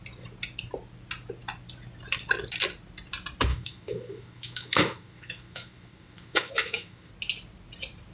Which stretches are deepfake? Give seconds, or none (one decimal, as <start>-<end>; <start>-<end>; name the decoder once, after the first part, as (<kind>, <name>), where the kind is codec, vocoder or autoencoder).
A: 3.5-7.1 (autoencoder, DAC-VAE)